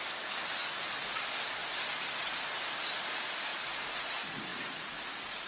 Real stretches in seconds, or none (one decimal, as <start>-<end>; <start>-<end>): 0.0-5.5